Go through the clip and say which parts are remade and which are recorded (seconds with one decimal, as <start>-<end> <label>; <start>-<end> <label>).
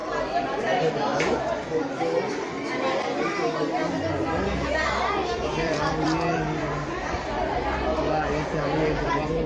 0.0-5.2 recorded; 5.2-7.1 remade; 7.1-9.5 recorded